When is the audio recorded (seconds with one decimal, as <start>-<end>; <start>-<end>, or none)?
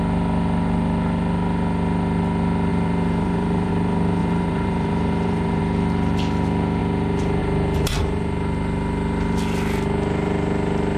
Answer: 0.0-2.7; 3.7-4.2; 5.6-11.0